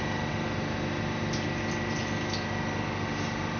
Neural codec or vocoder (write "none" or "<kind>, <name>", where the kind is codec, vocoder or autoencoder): none